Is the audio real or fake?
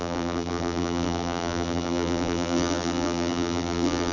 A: fake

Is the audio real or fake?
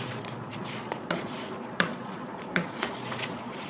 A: fake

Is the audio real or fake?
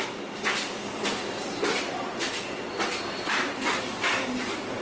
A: real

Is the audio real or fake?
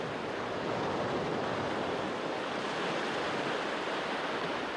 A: real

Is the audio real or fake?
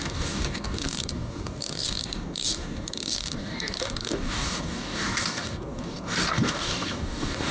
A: fake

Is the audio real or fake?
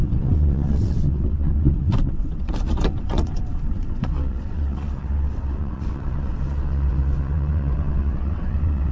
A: fake